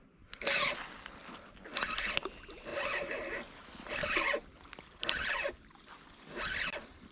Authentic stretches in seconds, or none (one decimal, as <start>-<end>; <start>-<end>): 0.0-7.1